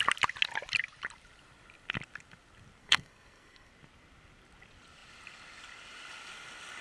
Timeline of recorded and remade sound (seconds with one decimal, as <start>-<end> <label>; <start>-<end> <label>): 0.0-2.8 recorded; 2.8-3.7 remade; 3.7-6.8 recorded

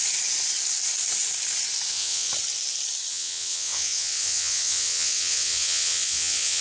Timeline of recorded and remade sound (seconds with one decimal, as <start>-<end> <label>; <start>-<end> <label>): 0.0-1.9 recorded; 1.9-2.3 remade; 2.3-3.1 recorded; 3.1-6.6 remade

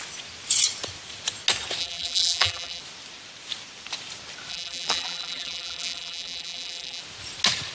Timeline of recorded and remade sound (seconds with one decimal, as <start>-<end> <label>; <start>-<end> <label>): 0.0-1.8 recorded; 1.8-2.8 remade; 2.8-4.5 recorded; 4.5-7.0 remade; 7.0-7.7 recorded

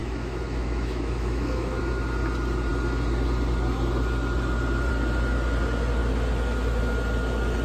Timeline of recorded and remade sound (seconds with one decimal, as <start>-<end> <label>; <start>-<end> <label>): 0.0-1.8 remade; 1.8-7.6 recorded